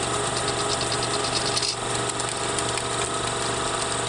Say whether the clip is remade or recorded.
recorded